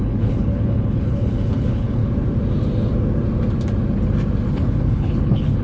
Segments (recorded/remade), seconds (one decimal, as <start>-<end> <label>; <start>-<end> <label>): 0.0-2.0 remade; 2.0-4.5 recorded; 4.5-5.6 remade